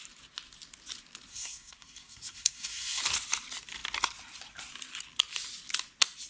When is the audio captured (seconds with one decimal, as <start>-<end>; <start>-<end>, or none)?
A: 0.0-1.3; 3.0-6.3